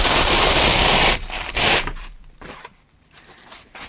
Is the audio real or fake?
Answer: fake